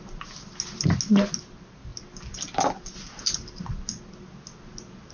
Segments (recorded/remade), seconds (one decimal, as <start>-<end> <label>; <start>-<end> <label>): 0.0-5.1 recorded